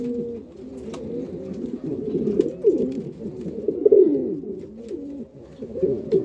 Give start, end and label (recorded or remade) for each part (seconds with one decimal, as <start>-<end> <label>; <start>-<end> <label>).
0.0-6.2 recorded